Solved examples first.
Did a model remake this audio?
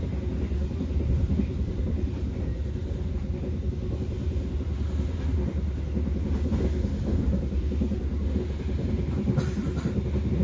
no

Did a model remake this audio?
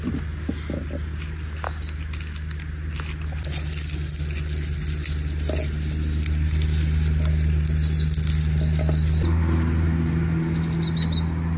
no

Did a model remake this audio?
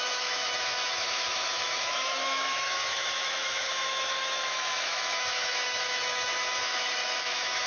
yes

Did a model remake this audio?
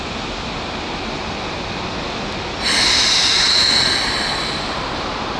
no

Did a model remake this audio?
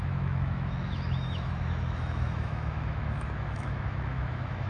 yes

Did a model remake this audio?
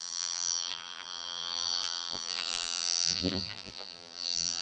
yes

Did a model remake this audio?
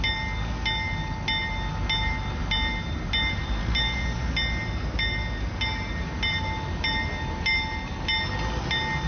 no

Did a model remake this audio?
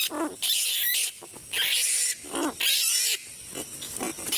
no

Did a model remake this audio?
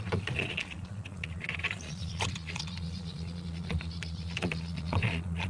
yes